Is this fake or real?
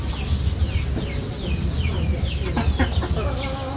real